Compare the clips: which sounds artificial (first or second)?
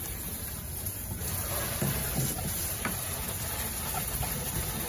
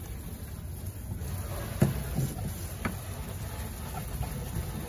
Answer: first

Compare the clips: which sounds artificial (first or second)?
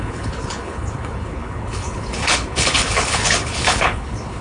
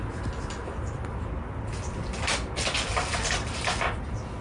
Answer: first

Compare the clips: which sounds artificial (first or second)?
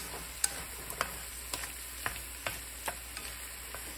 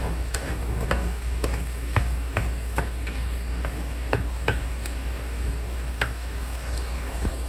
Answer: second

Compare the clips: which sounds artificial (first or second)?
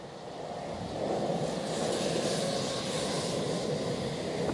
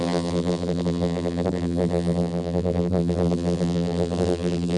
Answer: second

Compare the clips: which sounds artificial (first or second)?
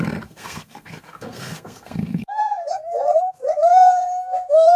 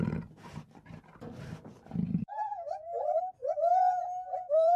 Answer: first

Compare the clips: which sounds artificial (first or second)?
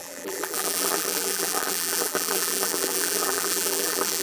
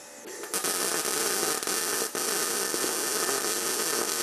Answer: first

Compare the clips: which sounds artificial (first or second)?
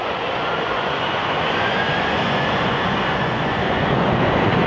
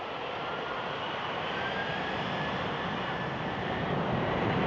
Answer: first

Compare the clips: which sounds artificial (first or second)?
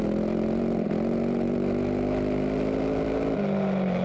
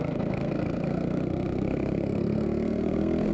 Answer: second